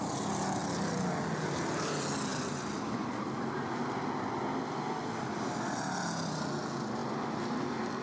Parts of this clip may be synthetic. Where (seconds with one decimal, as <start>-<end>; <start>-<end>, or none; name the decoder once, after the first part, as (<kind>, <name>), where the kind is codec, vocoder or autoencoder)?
none